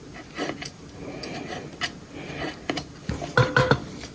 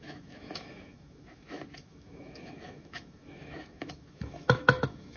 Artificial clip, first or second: second